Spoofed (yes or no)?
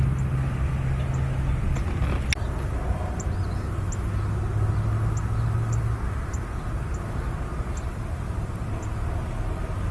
no